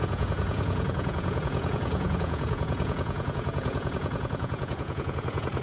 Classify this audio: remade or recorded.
remade